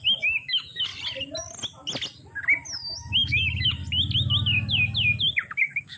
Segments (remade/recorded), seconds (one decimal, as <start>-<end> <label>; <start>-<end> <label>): 0.0-0.9 remade; 0.9-2.7 recorded; 2.7-3.8 remade; 3.8-5.2 recorded; 5.2-6.0 remade